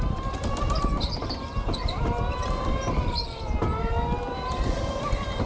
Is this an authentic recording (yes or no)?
yes